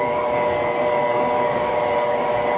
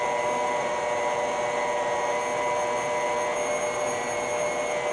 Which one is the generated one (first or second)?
first